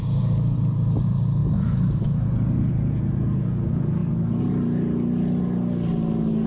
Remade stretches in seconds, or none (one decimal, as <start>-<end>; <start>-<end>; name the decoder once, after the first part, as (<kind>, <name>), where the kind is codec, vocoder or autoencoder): 0.0-4.0 (vocoder, Vocos)